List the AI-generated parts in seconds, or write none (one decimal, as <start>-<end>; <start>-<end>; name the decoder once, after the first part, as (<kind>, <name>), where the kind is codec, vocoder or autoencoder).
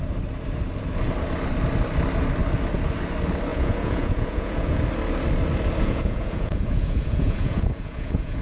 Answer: 3.5-4.8 (vocoder, Vocos); 5.8-8.4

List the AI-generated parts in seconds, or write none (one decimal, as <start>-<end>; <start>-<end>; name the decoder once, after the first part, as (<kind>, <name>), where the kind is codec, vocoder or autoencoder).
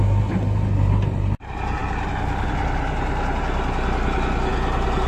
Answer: none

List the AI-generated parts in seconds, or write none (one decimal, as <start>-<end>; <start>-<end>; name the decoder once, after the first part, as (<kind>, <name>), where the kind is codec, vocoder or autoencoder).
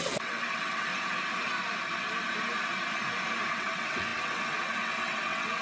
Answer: 0.0-0.9 (vocoder, WaveNeXt); 3.5-5.6